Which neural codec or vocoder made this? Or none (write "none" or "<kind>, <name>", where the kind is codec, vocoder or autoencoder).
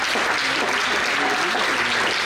none